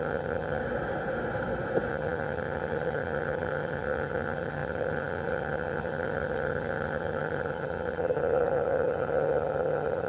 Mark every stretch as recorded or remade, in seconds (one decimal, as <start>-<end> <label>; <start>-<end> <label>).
0.0-0.6 remade; 0.6-1.9 recorded; 1.9-10.1 remade